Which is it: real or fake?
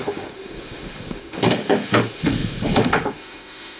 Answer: fake